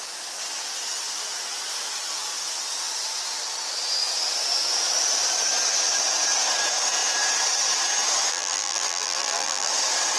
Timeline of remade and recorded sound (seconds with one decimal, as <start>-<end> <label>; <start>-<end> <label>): 0.0-8.3 recorded; 8.3-9.7 remade; 9.7-10.2 recorded